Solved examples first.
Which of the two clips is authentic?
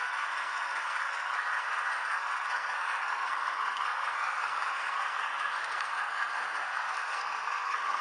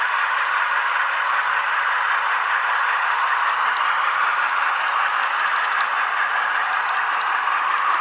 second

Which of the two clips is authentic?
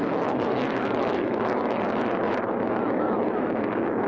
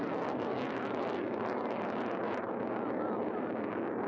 second